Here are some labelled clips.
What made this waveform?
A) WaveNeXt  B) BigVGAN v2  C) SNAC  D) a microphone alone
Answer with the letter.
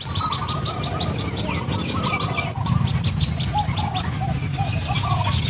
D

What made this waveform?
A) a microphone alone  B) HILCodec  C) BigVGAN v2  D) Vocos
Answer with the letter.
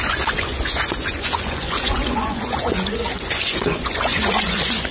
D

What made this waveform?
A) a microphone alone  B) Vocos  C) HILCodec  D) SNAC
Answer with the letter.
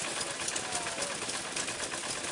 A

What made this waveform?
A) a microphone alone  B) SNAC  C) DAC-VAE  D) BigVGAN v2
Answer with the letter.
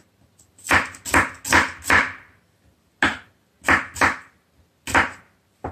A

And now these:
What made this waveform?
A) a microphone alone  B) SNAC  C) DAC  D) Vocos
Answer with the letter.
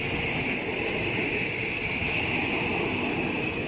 A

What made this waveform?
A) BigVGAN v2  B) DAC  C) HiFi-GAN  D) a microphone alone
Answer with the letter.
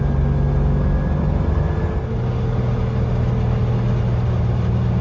D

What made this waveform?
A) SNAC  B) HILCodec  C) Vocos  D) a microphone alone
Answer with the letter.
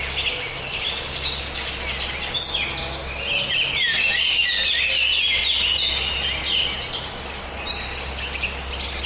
D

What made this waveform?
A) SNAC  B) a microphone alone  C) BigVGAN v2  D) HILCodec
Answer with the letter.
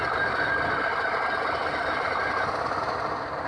B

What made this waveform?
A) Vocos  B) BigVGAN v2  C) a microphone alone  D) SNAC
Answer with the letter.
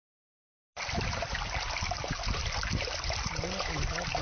C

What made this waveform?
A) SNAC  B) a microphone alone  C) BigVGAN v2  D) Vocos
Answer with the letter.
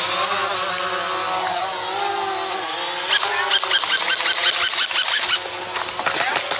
B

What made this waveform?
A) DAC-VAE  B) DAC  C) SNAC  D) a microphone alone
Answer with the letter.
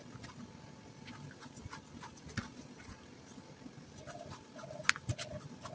D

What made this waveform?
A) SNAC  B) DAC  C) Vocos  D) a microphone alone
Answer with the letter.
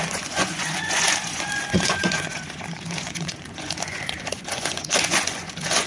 C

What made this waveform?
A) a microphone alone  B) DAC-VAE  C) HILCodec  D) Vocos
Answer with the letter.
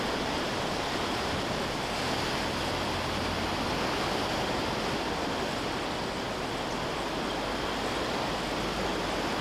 A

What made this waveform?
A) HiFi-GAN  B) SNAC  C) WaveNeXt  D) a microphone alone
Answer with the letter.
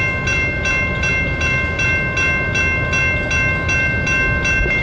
D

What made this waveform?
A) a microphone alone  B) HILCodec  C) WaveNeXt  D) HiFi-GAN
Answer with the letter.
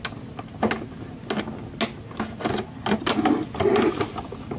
A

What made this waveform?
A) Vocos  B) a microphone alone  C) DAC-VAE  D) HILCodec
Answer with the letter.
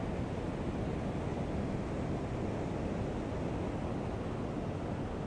B